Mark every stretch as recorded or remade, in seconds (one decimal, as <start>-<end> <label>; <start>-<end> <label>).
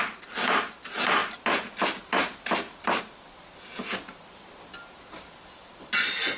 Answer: 0.0-6.4 recorded